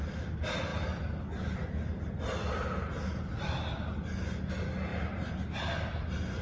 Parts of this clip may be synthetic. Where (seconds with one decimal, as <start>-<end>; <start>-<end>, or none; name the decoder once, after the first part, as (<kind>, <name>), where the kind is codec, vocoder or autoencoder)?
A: none